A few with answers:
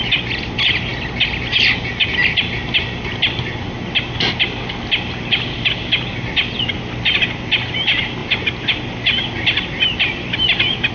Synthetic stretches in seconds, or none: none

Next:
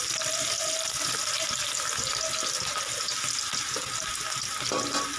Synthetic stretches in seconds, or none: none

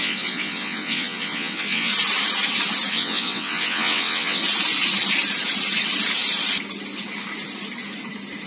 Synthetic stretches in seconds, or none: 0.0-1.9 (vocoder, WaveNeXt); 2.9-4.4

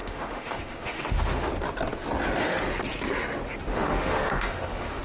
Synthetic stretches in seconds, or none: 0.0-1.5 (autoencoder, DAC-VAE); 3.7-5.0